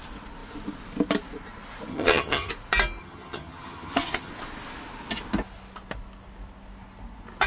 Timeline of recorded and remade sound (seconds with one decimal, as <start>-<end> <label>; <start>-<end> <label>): 0.0-1.9 recorded; 1.9-2.5 remade; 2.5-3.0 recorded; 3.0-4.3 remade; 4.3-7.5 recorded